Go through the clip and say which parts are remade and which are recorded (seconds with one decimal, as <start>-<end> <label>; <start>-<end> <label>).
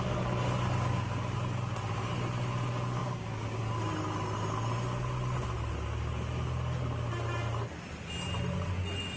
0.0-3.0 recorded; 3.0-3.6 remade; 3.6-9.2 recorded